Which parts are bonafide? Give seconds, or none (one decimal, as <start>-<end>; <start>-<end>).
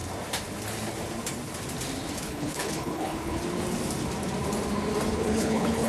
0.0-2.2; 3.4-5.1